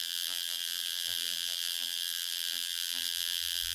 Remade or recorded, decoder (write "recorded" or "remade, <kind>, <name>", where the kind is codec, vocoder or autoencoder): remade, vocoder, BigVGAN v2